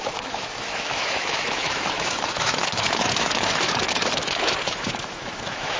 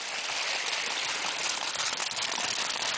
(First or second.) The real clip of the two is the second